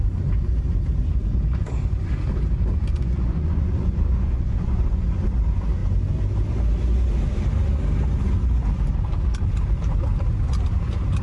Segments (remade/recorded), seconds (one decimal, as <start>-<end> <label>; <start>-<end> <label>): 0.0-2.9 recorded; 2.9-5.0 remade; 5.0-11.2 recorded